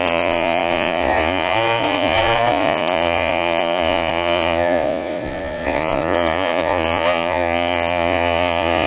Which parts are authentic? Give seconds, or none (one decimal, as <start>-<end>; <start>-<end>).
none